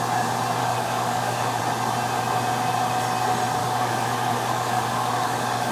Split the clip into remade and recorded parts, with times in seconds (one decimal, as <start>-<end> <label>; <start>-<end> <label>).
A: 0.0-0.6 recorded; 0.6-1.6 remade; 1.6-3.6 recorded; 3.6-5.7 remade

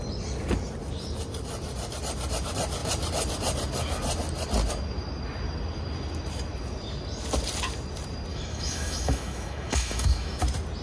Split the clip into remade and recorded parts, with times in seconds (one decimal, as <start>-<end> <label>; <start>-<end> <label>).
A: 0.0-8.3 recorded; 8.3-10.4 remade; 10.4-10.8 recorded